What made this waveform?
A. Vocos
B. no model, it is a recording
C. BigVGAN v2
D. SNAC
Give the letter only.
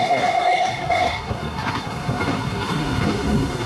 D